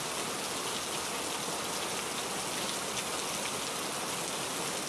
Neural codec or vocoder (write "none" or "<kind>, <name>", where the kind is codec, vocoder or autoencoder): none